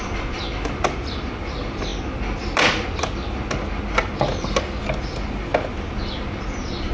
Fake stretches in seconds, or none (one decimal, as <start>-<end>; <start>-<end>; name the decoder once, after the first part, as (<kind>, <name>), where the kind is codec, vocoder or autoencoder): none